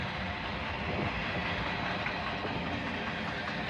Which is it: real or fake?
real